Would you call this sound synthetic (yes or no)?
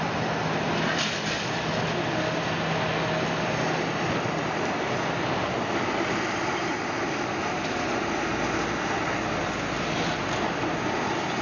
no